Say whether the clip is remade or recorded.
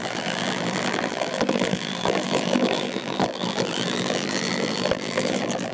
remade